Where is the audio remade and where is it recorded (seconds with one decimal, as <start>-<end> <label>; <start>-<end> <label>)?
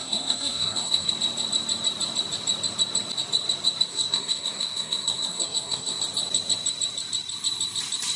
0.0-1.1 remade; 1.1-3.9 recorded; 3.9-6.0 remade; 6.0-8.2 recorded